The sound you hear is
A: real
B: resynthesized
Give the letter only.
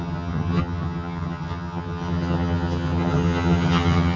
B